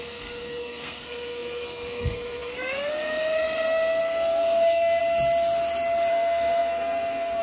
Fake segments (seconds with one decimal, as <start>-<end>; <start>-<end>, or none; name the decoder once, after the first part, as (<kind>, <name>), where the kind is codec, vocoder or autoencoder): 0.0-5.0 (codec, SNAC); 6.1-7.4